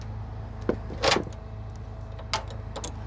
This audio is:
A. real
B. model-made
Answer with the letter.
A